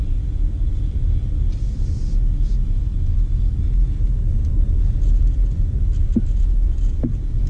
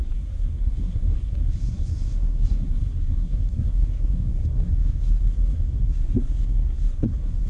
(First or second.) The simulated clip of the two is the second